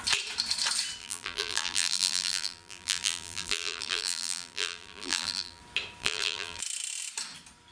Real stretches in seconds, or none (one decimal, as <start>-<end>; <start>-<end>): 0.0-1.0; 5.6-6.0; 6.6-7.7